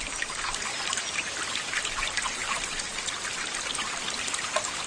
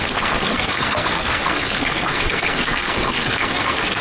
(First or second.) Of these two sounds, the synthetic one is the second